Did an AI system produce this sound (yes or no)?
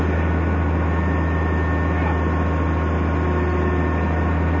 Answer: no